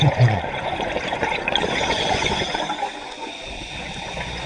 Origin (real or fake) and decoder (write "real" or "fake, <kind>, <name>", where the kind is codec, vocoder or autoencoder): fake, vocoder, Vocos